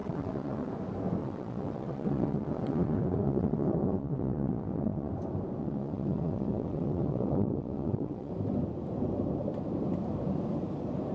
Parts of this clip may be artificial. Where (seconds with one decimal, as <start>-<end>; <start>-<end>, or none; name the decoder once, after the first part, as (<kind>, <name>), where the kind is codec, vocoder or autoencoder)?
0.0-0.7 (vocoder, WaveNeXt); 1.2-5.1; 5.6-8.3

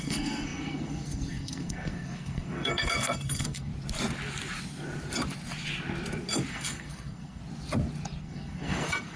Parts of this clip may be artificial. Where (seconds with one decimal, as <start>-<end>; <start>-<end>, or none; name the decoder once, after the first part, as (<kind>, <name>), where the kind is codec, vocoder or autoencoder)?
0.0-3.7 (codec, SNAC); 6.5-7.4; 8.2-9.2

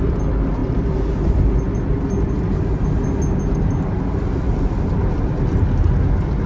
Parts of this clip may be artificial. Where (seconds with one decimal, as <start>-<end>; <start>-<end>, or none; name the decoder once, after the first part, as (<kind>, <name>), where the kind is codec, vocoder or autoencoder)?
none

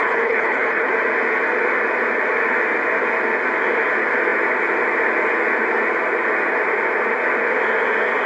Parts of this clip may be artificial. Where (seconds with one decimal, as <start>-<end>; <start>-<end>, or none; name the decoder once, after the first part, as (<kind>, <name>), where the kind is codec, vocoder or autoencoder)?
0.0-0.9 (codec, HILCodec)

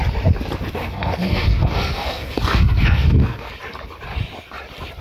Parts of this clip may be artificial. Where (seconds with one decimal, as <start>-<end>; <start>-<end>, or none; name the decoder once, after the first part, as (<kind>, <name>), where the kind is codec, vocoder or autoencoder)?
0.8-3.5 (codec, SNAC)

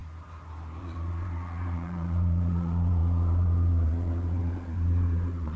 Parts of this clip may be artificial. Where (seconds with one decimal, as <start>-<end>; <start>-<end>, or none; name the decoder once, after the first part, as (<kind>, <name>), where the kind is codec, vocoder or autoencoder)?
0.8-5.6 (vocoder, Vocos)

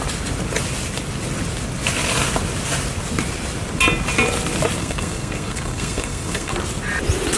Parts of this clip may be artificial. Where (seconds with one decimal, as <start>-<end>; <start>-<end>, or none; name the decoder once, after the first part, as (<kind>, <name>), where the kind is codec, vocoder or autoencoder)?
4.8-6.5 (codec, SNAC)